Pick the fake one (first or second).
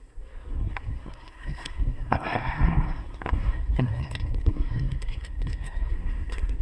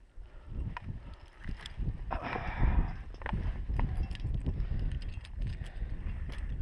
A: first